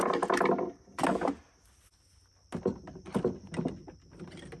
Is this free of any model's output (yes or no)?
yes